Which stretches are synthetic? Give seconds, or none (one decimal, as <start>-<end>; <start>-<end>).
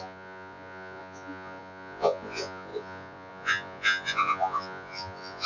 0.0-5.5